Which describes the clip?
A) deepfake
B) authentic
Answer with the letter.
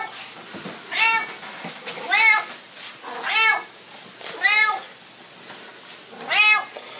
B